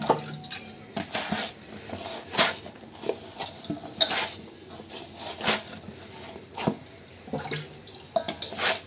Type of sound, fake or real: real